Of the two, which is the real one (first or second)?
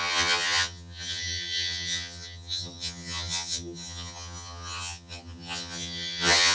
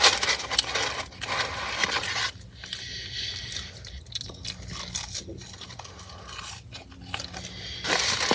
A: second